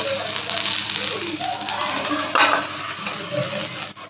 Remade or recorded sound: recorded